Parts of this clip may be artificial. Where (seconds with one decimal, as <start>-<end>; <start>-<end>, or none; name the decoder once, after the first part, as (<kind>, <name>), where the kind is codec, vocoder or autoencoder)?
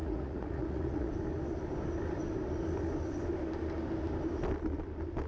0.0-1.1 (vocoder, Vocos)